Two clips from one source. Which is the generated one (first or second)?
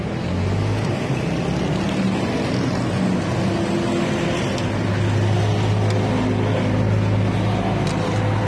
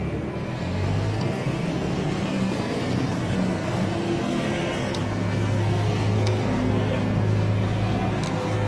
second